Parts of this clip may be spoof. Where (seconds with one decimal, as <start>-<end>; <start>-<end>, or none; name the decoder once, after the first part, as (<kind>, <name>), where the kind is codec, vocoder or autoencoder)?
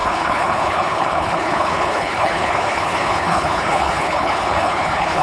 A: 0.0-5.2 (codec, HILCodec)